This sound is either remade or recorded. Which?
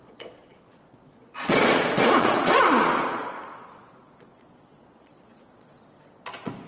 remade